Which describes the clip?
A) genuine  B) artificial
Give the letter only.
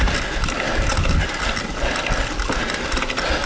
A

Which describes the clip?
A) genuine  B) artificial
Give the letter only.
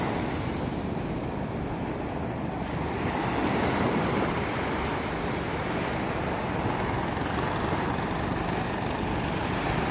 A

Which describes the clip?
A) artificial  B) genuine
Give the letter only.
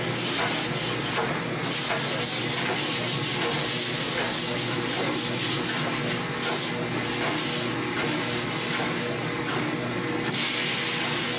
B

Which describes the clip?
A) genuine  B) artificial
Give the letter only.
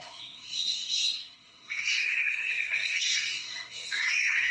B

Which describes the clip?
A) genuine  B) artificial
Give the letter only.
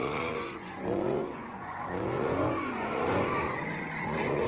B